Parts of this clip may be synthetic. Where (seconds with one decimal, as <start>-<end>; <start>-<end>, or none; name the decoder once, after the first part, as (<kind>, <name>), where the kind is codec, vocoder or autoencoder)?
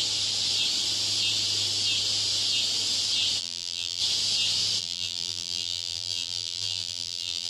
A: 3.4-4.0 (vocoder, BigVGAN v2); 4.8-7.5